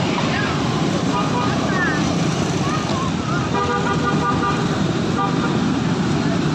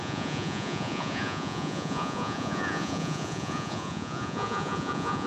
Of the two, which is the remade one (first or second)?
second